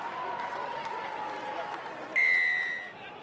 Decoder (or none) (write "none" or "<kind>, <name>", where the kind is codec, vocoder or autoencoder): none